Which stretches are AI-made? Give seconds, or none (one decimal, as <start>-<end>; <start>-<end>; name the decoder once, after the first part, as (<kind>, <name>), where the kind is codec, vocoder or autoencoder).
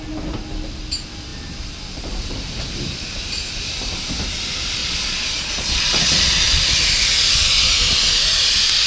4.8-6.6 (vocoder, Vocos)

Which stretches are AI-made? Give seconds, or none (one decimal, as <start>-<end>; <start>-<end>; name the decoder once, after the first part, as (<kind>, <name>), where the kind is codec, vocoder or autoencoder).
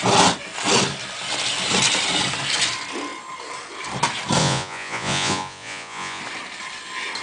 4.4-6.2 (vocoder, Vocos)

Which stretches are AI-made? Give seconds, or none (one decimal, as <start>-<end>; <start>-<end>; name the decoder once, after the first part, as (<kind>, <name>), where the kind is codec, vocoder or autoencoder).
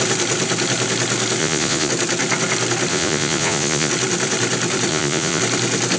1.4-1.9 (vocoder, Vocos); 2.9-3.9; 4.9-5.4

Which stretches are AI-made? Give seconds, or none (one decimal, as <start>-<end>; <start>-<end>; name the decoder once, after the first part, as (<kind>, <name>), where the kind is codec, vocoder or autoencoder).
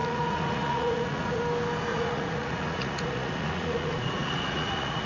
0.0-1.4 (vocoder, Vocos); 1.9-5.1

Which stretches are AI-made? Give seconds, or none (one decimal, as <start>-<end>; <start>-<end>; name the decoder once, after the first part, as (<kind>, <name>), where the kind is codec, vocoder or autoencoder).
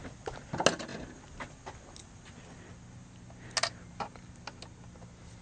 none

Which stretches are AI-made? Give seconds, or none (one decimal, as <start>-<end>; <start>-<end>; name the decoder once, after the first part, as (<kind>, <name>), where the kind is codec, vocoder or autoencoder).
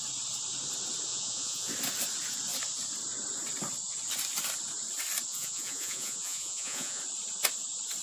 1.1-1.7 (vocoder, Vocos); 5.3-7.0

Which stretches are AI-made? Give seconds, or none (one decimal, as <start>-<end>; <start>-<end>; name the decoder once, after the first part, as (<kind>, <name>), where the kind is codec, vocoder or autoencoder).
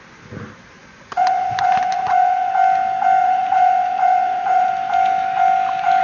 0.8-2.5 (vocoder, Vocos); 3.2-4.7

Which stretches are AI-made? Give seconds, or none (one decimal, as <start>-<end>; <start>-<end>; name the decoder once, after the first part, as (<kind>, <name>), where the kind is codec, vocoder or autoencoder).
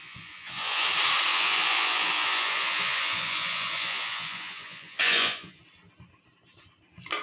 0.0-0.9 (vocoder, Vocos); 1.3-5.6